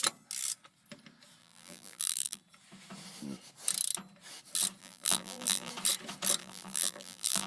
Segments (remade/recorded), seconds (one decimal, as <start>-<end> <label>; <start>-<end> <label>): 0.0-1.4 recorded; 1.4-2.4 remade; 2.4-4.8 recorded; 4.8-5.7 remade; 5.7-6.4 recorded; 6.4-7.5 remade